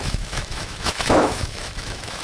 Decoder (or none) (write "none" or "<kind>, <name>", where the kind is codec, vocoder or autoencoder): autoencoder, DAC-VAE